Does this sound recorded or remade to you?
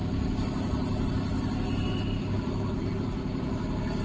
recorded